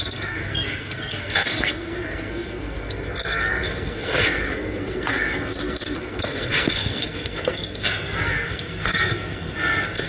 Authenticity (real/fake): fake